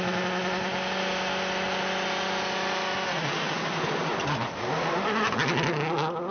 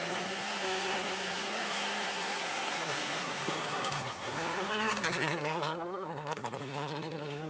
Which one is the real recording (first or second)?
first